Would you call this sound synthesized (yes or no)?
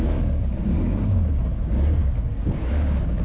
yes